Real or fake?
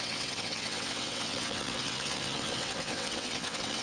fake